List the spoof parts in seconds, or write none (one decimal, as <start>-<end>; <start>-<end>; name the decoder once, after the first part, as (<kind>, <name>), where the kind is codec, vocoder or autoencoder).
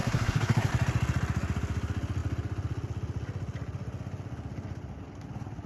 0.0-0.7 (codec, SNAC)